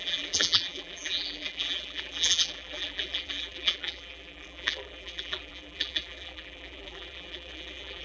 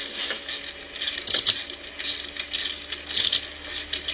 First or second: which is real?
second